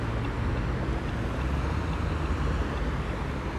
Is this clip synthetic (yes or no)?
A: no